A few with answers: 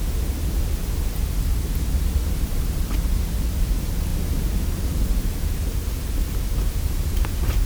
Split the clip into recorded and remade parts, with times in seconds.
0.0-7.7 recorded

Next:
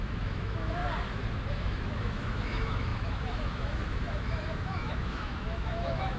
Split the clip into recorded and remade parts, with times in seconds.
0.0-0.8 remade; 0.8-1.5 recorded; 1.5-6.2 remade

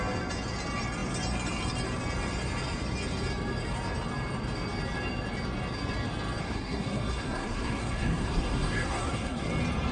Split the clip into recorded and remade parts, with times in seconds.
0.0-6.4 recorded; 6.4-9.5 remade; 9.5-9.9 recorded